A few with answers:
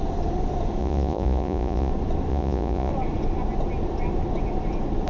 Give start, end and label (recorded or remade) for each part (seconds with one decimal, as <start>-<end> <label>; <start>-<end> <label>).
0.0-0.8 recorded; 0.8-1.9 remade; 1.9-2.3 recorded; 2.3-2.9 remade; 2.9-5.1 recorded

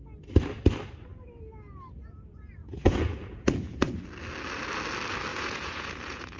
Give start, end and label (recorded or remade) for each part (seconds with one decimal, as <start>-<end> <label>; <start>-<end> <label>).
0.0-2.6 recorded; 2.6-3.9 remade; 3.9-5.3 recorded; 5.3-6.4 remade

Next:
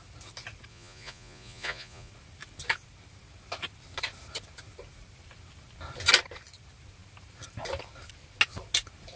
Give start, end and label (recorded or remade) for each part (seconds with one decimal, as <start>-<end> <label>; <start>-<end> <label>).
0.0-0.7 recorded; 0.7-2.1 remade; 2.1-9.2 recorded

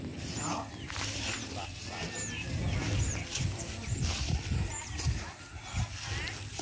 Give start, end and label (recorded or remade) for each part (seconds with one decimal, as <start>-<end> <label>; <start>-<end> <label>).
0.0-6.6 recorded

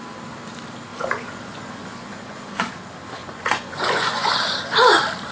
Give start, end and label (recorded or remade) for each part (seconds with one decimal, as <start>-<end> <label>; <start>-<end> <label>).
0.0-0.9 recorded; 0.9-2.6 remade; 2.6-3.2 recorded; 3.2-4.3 remade; 4.3-5.3 recorded

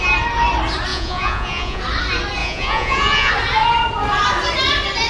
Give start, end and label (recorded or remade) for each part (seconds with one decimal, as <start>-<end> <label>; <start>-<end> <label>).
0.0-0.9 recorded; 0.9-1.8 remade; 1.8-2.4 recorded; 2.4-3.3 remade; 3.3-5.1 recorded

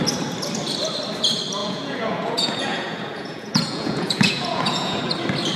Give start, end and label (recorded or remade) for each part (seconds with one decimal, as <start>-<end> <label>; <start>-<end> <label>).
0.0-1.6 recorded; 1.6-5.0 remade; 5.0-5.6 recorded